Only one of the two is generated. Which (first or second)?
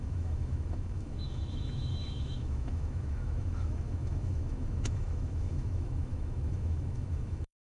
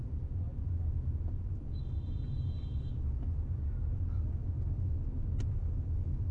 first